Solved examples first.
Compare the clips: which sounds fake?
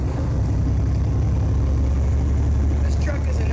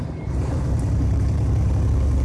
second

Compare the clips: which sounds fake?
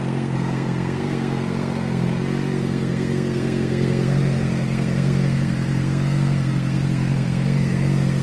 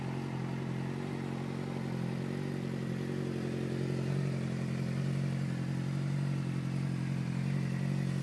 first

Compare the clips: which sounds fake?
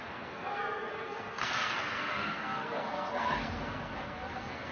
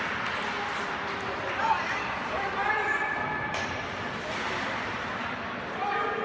first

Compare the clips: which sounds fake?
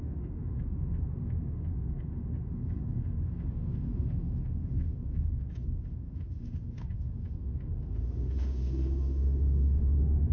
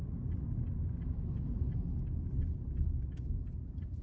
first